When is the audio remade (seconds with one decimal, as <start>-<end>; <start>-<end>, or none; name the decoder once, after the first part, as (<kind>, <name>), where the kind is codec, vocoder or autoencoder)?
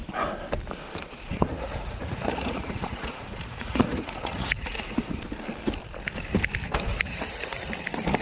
1.2-5.2 (vocoder, Vocos); 6.9-7.6